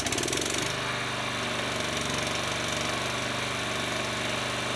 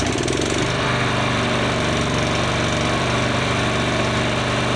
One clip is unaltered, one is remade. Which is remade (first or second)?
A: second